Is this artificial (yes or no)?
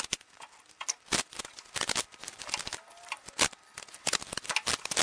no